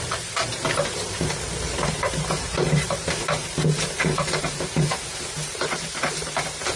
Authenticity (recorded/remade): remade